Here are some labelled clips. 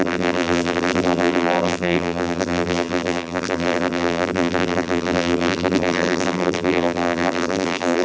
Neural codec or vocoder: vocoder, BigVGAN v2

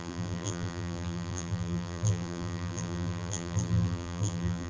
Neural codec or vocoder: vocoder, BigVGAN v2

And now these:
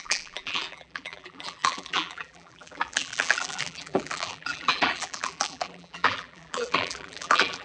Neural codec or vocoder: vocoder, BigVGAN v2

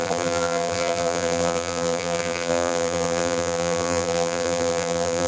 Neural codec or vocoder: vocoder, BigVGAN v2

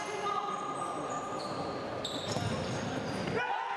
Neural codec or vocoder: none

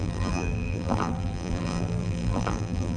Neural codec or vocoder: vocoder, BigVGAN v2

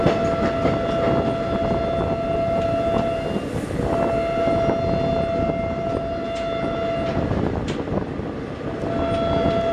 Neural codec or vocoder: none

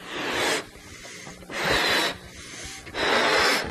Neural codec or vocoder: none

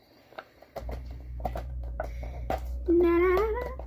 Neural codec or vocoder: vocoder, BigVGAN v2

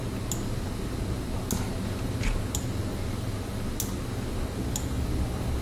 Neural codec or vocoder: none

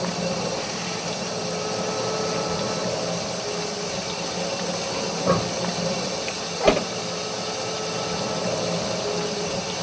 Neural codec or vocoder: vocoder, BigVGAN v2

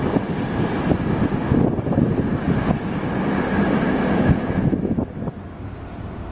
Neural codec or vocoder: vocoder, BigVGAN v2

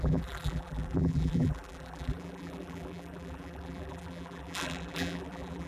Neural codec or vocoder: vocoder, BigVGAN v2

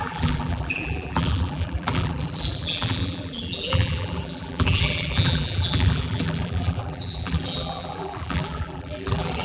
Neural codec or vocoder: vocoder, BigVGAN v2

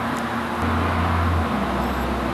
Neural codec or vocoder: none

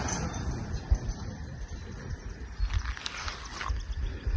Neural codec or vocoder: none